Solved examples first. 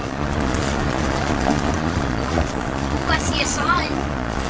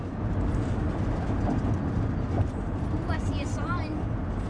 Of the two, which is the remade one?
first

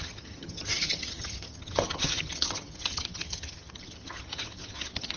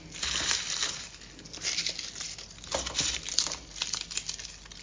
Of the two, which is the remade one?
first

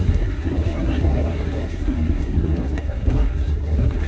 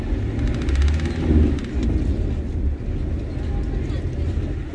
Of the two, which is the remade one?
first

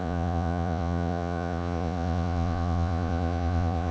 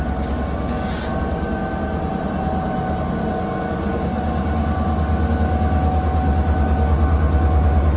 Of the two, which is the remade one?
first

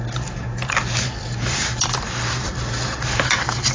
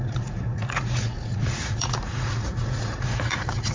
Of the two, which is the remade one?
second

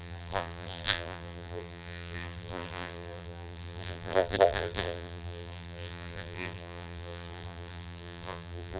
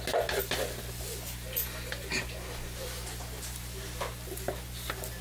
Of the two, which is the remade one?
first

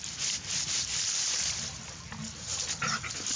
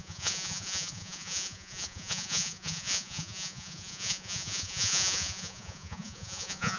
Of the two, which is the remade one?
second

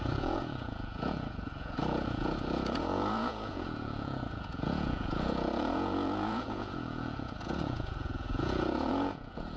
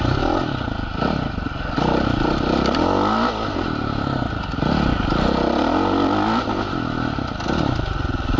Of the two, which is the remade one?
first